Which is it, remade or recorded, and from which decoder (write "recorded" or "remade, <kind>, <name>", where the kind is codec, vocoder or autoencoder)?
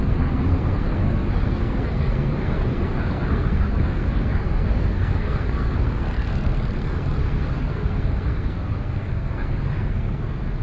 remade, codec, SNAC